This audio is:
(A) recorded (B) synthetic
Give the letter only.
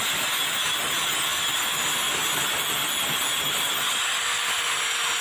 A